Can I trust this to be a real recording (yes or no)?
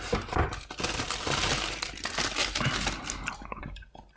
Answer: yes